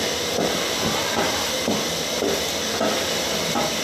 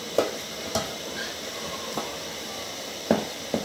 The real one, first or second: first